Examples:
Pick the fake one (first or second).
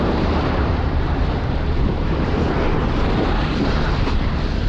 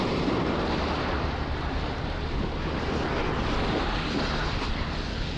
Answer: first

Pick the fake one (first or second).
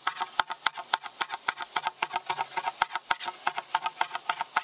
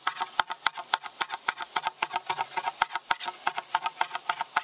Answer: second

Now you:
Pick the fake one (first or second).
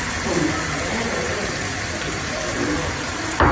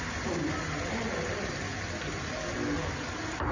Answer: first